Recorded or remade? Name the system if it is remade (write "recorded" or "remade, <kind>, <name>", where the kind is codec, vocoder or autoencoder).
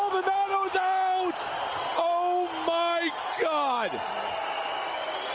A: recorded